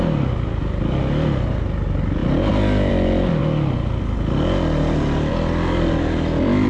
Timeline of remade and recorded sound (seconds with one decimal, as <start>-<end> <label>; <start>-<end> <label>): 0.0-6.7 recorded